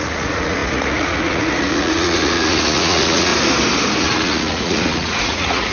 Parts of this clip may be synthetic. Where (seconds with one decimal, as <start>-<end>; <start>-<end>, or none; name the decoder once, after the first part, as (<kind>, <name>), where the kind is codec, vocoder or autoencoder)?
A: 0.0-3.3 (vocoder, Vocos); 4.0-5.7